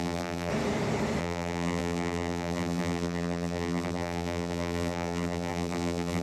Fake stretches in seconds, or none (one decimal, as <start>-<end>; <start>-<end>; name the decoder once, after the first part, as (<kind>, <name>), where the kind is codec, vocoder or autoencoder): 0.0-0.5 (vocoder, BigVGAN v2); 1.2-6.2